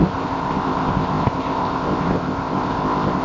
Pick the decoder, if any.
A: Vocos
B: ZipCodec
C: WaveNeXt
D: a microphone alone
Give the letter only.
B